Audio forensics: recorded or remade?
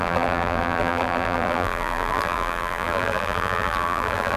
remade